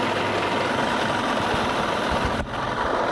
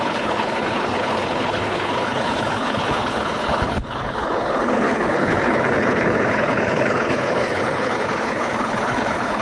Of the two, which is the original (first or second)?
first